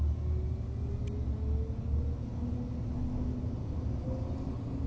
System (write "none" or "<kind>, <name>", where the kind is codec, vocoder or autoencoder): none